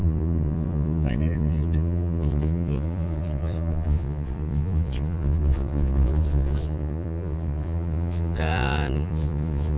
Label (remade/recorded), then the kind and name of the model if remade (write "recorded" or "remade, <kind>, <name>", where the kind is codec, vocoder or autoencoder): remade, vocoder, Vocos